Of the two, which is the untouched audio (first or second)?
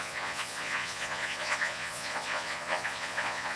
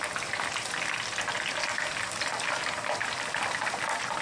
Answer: second